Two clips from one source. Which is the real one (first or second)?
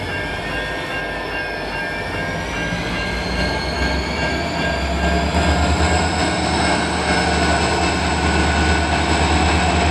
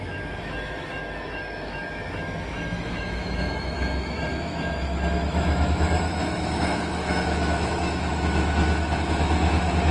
first